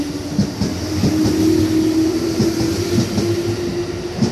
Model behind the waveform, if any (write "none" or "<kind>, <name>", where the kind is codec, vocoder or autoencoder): none